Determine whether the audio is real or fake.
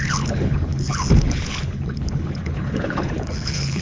fake